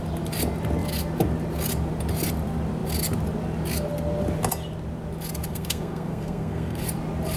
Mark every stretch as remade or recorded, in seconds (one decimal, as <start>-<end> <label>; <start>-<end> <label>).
0.0-5.5 recorded; 5.5-6.8 remade; 6.8-7.4 recorded